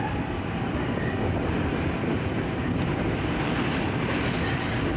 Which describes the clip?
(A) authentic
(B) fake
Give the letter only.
A